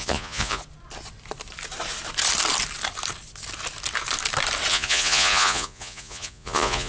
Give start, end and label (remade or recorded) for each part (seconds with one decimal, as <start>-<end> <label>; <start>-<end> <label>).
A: 0.0-0.6 remade; 0.6-4.7 recorded; 4.7-6.9 remade